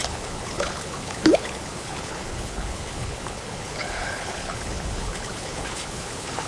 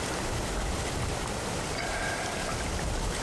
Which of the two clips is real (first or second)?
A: second